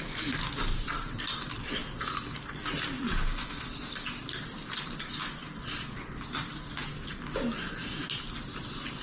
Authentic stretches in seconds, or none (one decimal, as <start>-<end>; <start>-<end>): 0.0-9.0